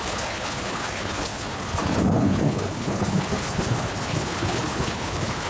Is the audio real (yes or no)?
no